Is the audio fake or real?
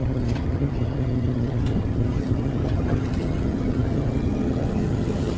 fake